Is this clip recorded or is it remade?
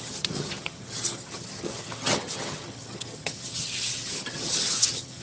remade